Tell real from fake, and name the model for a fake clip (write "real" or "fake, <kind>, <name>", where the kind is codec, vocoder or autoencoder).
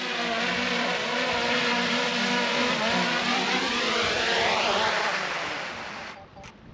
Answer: real